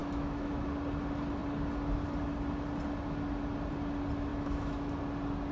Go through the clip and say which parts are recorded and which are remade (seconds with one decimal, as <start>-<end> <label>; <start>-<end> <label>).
0.0-0.5 remade; 0.5-4.3 recorded; 4.3-5.0 remade; 5.0-5.5 recorded